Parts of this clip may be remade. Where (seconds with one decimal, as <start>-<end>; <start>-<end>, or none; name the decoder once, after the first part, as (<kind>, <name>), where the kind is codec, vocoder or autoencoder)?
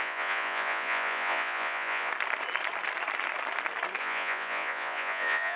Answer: 0.0-2.1 (vocoder, Vocos); 4.0-5.6